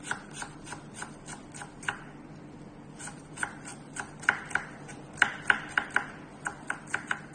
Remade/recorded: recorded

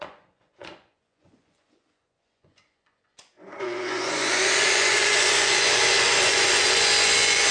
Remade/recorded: remade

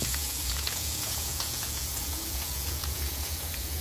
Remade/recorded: remade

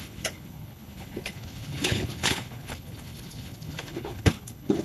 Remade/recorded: remade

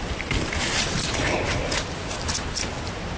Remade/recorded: recorded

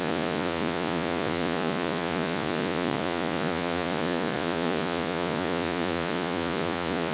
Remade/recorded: remade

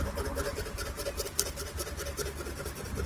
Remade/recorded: recorded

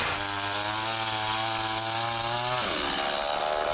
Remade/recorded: recorded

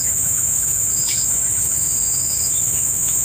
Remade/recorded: remade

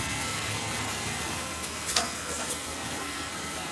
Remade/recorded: remade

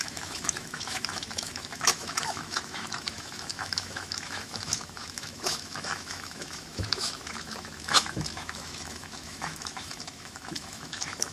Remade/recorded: remade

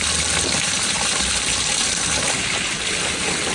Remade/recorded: recorded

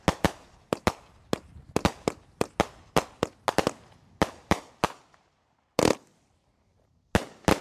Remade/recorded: recorded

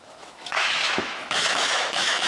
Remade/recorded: remade